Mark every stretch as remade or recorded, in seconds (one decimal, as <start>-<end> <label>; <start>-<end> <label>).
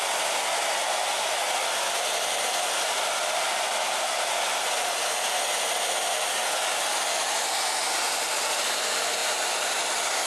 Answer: 0.0-10.3 recorded